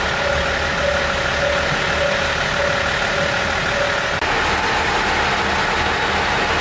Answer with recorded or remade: recorded